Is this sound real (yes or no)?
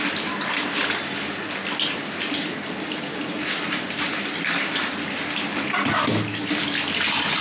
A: yes